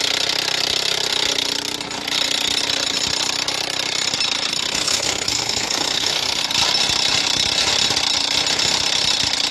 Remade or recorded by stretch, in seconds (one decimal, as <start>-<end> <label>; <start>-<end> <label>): 0.0-4.5 recorded; 4.5-6.4 remade; 6.4-9.5 recorded